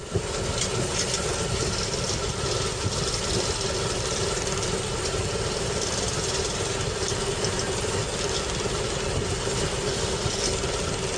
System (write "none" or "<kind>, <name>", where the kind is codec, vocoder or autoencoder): none